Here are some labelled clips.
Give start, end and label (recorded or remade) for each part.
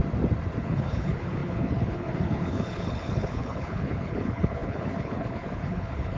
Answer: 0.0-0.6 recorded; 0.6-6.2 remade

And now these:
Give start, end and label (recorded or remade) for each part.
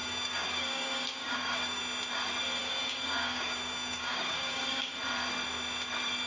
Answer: 0.0-1.8 remade; 1.8-2.6 recorded; 2.6-4.9 remade; 4.9-6.3 recorded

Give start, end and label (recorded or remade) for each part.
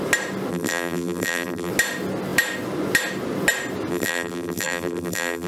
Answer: 0.0-0.5 recorded; 0.5-1.7 remade; 1.7-3.9 recorded; 3.9-5.5 remade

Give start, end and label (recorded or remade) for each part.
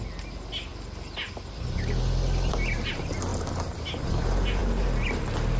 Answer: 0.0-5.6 recorded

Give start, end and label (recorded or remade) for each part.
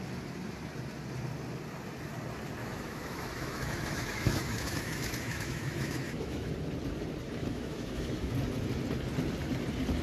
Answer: 0.0-2.6 recorded; 2.6-6.5 remade; 6.5-7.4 recorded; 7.4-8.3 remade; 8.3-10.0 recorded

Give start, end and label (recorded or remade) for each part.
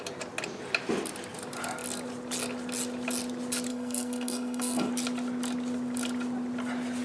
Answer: 0.0-3.7 recorded; 3.7-4.9 remade; 4.9-7.0 recorded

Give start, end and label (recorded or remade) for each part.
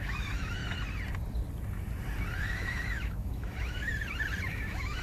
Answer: 0.0-0.6 remade; 0.6-2.4 recorded; 2.4-3.9 remade; 3.9-4.5 recorded; 4.5-5.0 remade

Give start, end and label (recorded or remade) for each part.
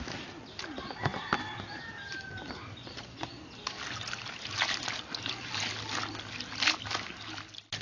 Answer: 0.0-7.8 recorded